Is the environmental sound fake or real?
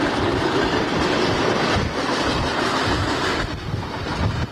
real